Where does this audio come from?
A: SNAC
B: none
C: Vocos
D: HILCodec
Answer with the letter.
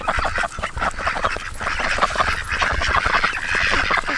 B